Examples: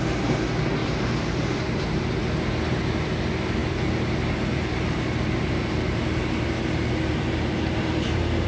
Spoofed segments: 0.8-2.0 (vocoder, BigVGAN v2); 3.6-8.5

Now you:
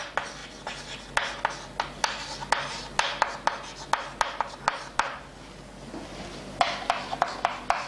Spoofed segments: none

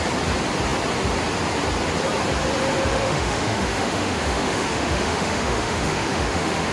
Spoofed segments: 2.9-6.7 (autoencoder, DAC-VAE)